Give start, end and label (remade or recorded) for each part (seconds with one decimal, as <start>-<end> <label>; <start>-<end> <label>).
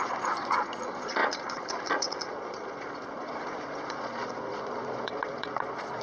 0.0-6.0 remade